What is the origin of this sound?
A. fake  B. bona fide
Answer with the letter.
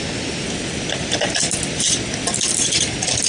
B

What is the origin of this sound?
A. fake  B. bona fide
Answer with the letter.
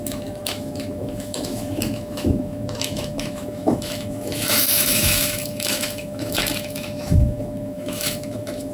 A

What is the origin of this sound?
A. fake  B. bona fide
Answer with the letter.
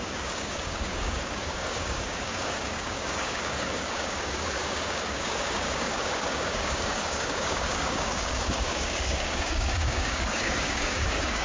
A